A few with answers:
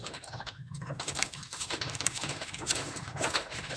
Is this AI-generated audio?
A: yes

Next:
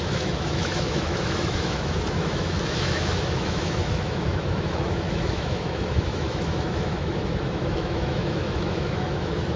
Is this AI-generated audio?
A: yes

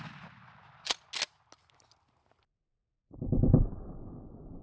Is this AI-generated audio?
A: no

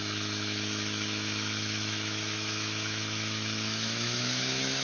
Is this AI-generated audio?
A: yes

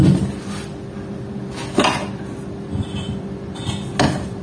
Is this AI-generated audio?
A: no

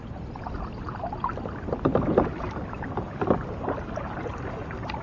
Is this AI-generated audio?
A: no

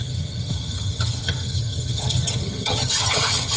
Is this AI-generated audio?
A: yes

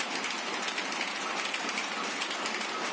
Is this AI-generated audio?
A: no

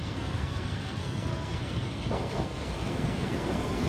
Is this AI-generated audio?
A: yes